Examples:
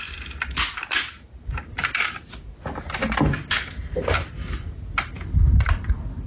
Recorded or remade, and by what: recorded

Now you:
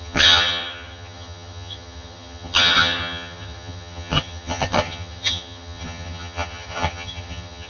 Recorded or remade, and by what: remade, vocoder, HiFi-GAN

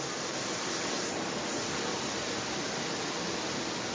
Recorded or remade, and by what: recorded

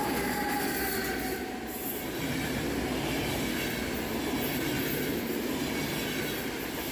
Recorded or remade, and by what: recorded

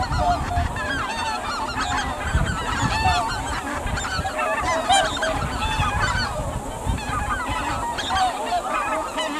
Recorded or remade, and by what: recorded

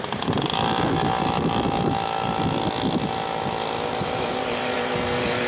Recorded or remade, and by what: recorded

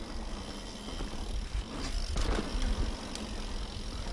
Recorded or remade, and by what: recorded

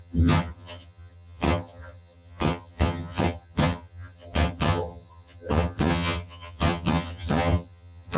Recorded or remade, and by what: remade, vocoder, HiFi-GAN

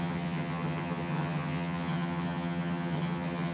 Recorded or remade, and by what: remade, vocoder, HiFi-GAN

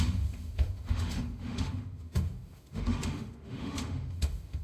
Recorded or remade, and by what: remade, autoencoder, DAC-VAE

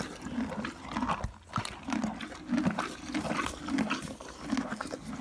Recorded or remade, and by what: recorded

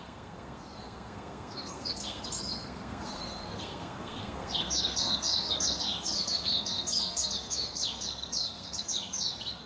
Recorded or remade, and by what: remade, codec, SNAC